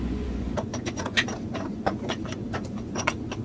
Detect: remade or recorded remade